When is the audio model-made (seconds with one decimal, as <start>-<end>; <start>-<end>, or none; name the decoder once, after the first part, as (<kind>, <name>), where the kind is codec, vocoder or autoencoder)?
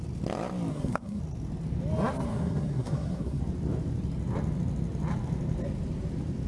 0.7-1.2 (codec, SNAC); 2.3-3.4